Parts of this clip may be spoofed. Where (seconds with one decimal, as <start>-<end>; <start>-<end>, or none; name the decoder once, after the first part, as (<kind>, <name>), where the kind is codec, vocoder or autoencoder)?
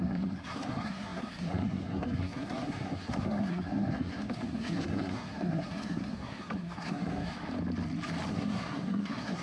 0.0-7.3 (codec, SNAC); 8.3-9.4